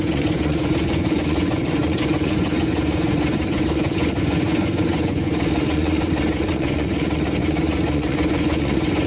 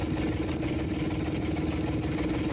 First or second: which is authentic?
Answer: second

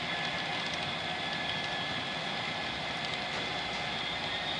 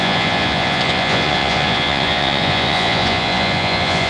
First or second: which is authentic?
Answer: first